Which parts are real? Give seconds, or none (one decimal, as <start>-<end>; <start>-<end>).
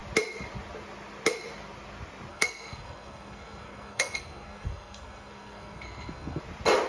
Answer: 0.0-2.3; 6.4-6.9